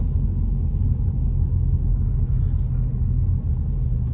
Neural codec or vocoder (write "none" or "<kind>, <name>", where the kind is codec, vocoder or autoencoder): none